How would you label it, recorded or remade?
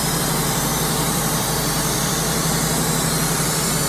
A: remade